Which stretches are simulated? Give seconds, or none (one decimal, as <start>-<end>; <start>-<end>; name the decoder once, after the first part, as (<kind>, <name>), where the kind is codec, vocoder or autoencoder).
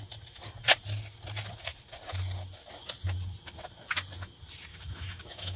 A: 4.7-5.6 (autoencoder, DAC-VAE)